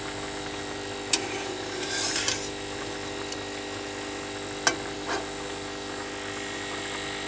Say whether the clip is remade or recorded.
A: recorded